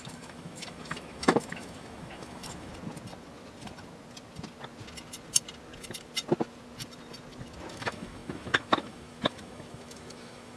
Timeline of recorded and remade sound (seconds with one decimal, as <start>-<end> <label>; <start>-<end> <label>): 0.0-2.7 remade; 2.7-7.7 recorded; 7.7-10.6 remade

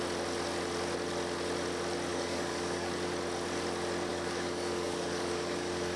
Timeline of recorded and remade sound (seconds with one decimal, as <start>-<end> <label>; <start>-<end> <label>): 0.0-2.1 recorded; 2.1-2.9 remade; 2.9-4.1 recorded; 4.1-6.0 remade

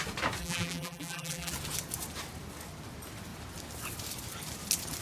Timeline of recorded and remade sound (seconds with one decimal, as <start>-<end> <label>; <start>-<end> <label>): 0.0-0.4 recorded; 0.4-1.5 remade; 1.5-5.0 recorded

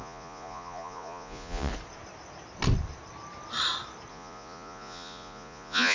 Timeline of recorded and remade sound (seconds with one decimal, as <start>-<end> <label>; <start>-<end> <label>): 0.0-1.7 remade; 1.7-4.1 recorded; 4.1-5.9 remade

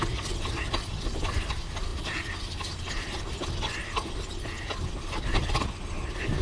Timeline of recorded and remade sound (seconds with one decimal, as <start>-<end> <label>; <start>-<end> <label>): 0.0-6.4 recorded

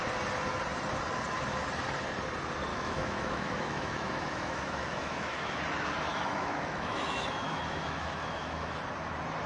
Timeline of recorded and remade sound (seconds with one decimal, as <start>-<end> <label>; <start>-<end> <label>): 0.0-2.7 recorded; 2.7-5.6 remade; 5.6-6.1 recorded; 6.1-8.8 remade; 8.8-9.5 recorded

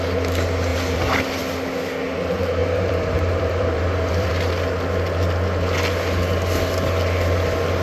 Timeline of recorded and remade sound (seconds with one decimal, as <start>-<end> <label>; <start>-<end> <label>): 0.0-0.7 recorded; 0.7-1.2 remade; 1.2-2.6 recorded; 2.6-4.3 remade; 4.3-7.8 recorded

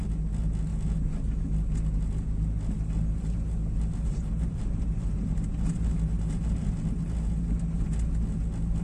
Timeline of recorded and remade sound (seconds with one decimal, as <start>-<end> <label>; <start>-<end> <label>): 0.0-0.7 recorded; 0.7-1.5 remade; 1.5-4.1 recorded; 4.1-6.7 remade; 6.7-8.8 recorded